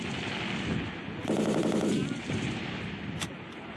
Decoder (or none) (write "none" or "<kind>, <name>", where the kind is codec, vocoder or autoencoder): none